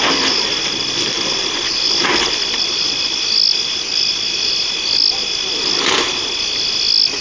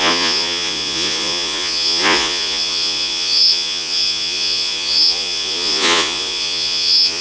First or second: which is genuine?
first